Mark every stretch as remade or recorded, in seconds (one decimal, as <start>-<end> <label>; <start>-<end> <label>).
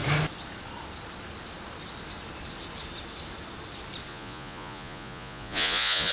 0.0-4.1 recorded; 4.1-6.1 remade